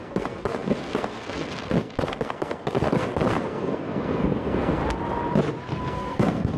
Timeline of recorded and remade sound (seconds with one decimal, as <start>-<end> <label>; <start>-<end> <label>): 0.0-4.8 remade; 4.8-5.8 recorded; 5.8-6.6 remade